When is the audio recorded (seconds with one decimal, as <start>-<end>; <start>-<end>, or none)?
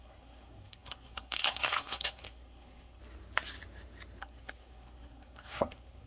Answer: 3.0-4.2